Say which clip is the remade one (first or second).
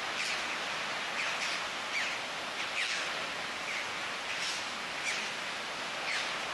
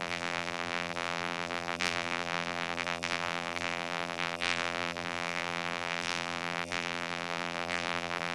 second